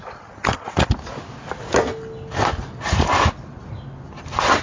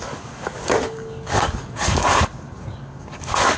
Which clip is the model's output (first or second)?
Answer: second